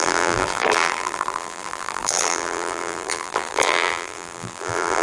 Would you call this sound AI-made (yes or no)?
yes